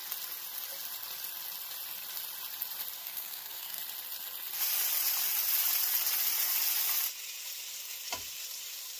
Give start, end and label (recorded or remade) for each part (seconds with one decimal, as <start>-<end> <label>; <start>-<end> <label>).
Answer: 0.0-3.0 recorded; 3.0-3.8 remade; 3.8-9.0 recorded